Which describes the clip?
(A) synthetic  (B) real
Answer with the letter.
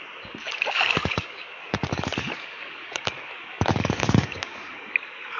A